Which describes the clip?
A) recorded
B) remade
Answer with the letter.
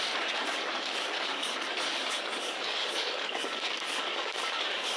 B